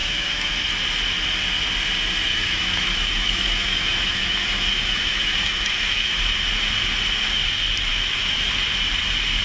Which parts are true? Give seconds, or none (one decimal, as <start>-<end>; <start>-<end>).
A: 0.5-2.3; 6.2-7.9; 8.5-9.4